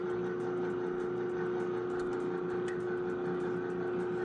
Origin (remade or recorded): recorded